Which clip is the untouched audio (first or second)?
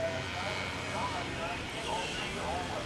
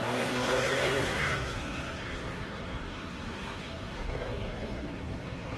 first